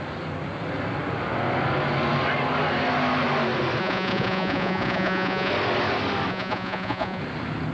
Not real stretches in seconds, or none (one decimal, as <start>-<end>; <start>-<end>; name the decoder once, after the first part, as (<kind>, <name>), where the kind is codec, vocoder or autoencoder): 3.8-5.5 (vocoder, Vocos); 6.3-7.2